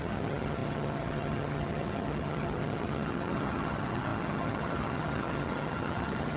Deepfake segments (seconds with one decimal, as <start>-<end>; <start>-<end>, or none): 0.0-6.4